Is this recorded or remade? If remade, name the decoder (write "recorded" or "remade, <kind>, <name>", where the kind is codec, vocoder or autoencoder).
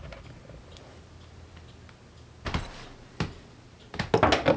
recorded